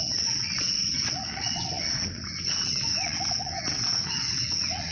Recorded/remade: remade